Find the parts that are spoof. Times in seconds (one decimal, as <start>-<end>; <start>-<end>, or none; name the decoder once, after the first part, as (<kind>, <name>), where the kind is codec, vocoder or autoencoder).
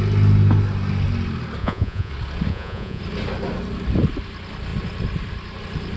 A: 1.6-2.1 (vocoder, Vocos); 2.5-3.0